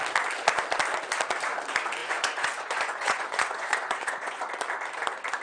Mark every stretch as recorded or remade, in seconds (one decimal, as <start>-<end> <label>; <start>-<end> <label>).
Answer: 0.0-2.0 recorded; 2.0-4.4 remade; 4.4-5.4 recorded